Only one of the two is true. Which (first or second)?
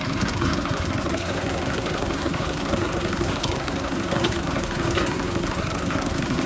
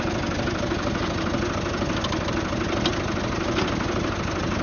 second